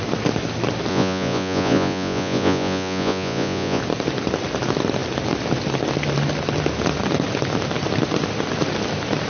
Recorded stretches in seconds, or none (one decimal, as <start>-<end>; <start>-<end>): 0.0-0.9; 3.8-9.3

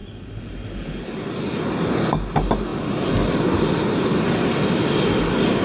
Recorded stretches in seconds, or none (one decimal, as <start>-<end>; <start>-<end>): 0.0-5.6

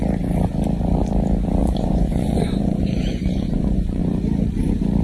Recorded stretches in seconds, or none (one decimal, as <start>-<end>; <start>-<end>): 0.0-1.6; 4.0-5.0

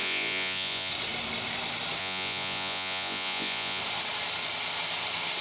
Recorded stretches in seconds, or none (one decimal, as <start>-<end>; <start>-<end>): 0.9-2.0; 3.8-5.4

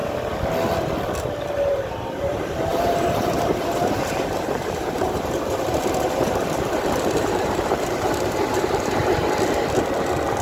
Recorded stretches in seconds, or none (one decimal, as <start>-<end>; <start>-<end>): 0.0-1.7; 9.0-10.4

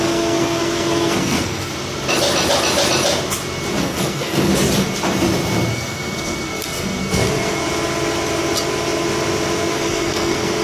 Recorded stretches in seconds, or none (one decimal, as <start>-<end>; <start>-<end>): 1.7-3.8; 4.5-5.7; 7.6-9.7